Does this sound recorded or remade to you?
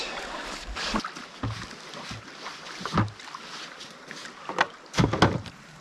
recorded